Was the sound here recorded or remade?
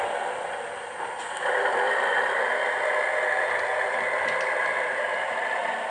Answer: recorded